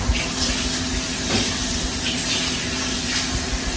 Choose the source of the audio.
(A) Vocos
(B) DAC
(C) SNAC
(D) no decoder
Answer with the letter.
D